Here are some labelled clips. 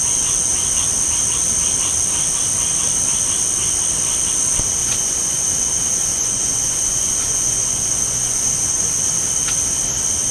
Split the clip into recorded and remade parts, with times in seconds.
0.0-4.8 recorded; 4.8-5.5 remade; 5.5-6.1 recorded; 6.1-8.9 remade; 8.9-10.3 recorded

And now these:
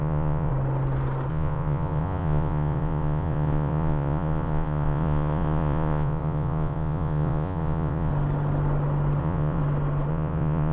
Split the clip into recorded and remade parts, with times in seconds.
0.0-0.5 remade; 0.5-1.3 recorded; 1.3-8.1 remade; 8.1-9.2 recorded; 9.2-9.6 remade; 9.6-10.1 recorded; 10.1-10.7 remade

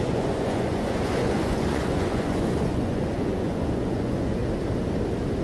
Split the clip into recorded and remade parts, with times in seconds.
0.0-4.4 remade; 4.4-5.4 recorded

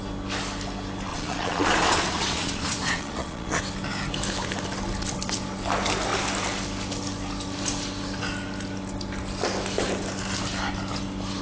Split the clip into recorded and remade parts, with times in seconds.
0.0-1.1 recorded; 1.1-3.6 remade; 3.6-11.4 recorded

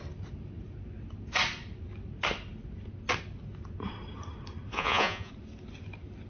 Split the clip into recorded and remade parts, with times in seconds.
0.0-4.7 recorded; 4.7-5.3 remade; 5.3-6.3 recorded

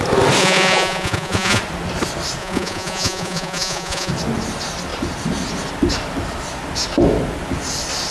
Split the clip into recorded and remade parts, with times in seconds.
0.0-0.4 recorded; 0.4-1.6 remade; 1.6-2.4 recorded; 2.4-4.1 remade; 4.1-8.1 recorded